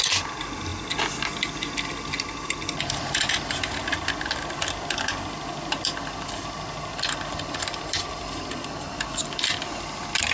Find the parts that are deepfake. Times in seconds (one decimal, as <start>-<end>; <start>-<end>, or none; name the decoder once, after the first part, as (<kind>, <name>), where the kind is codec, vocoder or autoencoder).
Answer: none